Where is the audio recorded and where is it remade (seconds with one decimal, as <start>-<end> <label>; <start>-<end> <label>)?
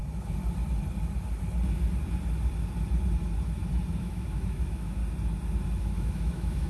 0.0-4.0 recorded; 4.0-5.0 remade; 5.0-5.8 recorded; 5.8-6.7 remade